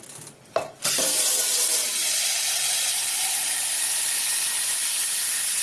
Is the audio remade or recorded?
recorded